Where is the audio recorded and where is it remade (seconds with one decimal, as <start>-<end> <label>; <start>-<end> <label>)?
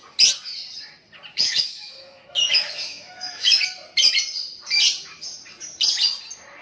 0.0-1.3 recorded; 1.3-3.6 remade; 3.6-6.6 recorded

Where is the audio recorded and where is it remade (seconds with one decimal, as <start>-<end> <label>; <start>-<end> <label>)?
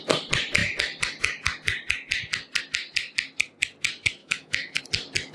0.0-4.2 recorded; 4.2-4.8 remade; 4.8-5.3 recorded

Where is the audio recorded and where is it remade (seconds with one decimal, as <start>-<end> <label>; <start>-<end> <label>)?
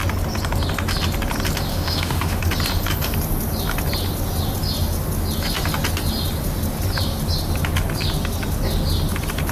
0.0-1.7 recorded; 1.7-2.4 remade; 2.4-9.5 recorded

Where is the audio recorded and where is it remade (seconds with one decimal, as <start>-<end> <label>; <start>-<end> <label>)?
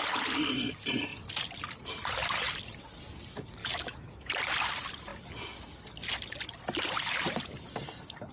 0.0-3.6 recorded; 3.6-4.3 remade; 4.3-8.3 recorded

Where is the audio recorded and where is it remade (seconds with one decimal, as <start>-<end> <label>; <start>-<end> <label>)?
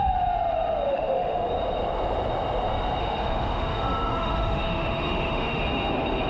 0.0-0.9 recorded; 0.9-1.5 remade; 1.5-3.0 recorded; 3.0-5.6 remade; 5.6-6.3 recorded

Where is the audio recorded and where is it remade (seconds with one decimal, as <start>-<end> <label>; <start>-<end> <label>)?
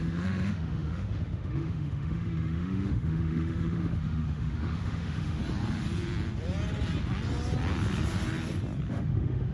0.0-5.4 remade; 5.4-8.9 recorded; 8.9-9.5 remade